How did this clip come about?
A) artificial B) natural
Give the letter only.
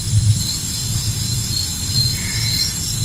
B